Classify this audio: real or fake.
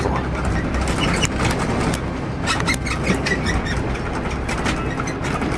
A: real